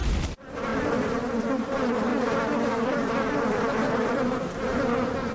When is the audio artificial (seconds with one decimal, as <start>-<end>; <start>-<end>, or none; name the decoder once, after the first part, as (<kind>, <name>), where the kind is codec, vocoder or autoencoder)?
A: 0.0-2.1 (vocoder, BigVGAN v2); 3.9-4.7